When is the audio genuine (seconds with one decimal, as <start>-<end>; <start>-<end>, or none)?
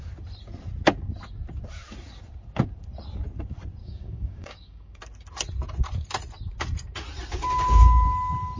0.0-3.8; 5.0-8.6